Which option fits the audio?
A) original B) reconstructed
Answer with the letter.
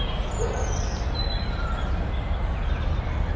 A